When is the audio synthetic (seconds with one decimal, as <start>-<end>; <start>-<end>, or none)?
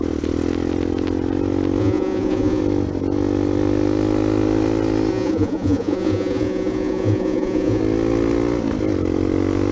1.8-2.6; 5.1-7.8